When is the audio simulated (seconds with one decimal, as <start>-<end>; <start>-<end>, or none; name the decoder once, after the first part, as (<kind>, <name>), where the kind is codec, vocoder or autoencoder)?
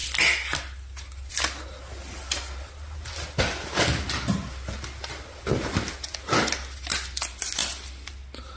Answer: none